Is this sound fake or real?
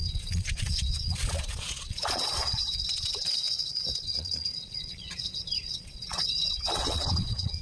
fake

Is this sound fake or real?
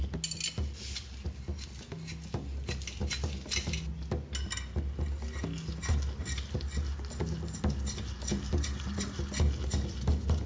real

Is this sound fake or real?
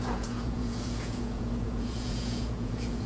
fake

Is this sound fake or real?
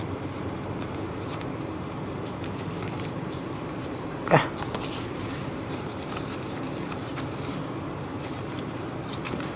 fake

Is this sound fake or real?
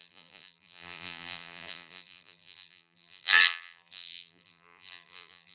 fake